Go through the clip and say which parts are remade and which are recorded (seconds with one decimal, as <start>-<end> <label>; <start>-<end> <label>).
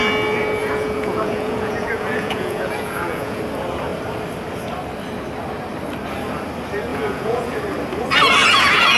0.0-0.6 recorded; 0.6-3.4 remade; 3.4-6.9 recorded; 6.9-7.6 remade; 7.6-8.4 recorded; 8.4-9.0 remade